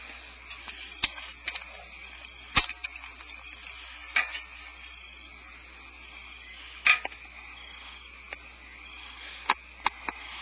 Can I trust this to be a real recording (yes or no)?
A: yes